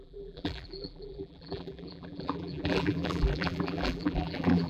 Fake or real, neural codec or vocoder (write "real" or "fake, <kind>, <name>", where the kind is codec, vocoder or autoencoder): fake, vocoder, BigVGAN v2